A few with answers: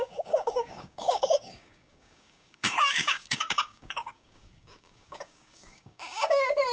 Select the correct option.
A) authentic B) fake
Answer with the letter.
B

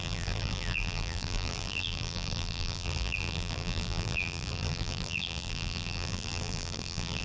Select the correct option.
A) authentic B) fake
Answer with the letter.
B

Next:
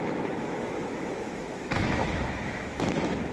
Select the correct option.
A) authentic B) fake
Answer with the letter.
B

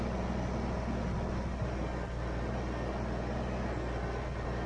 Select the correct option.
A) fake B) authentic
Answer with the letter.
B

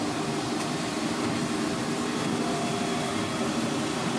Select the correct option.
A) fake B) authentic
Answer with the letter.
A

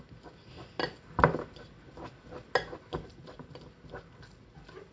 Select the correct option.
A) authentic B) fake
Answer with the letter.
A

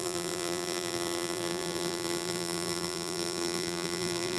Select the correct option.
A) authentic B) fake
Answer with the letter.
B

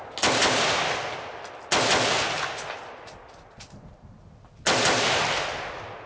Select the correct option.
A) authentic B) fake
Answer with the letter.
A